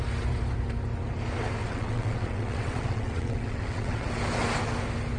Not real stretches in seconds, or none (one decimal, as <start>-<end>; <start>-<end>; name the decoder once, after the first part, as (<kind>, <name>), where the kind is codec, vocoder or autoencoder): 1.6-4.1 (vocoder, WaveNeXt)